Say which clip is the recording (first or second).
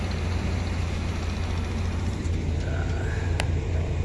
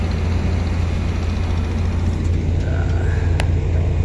second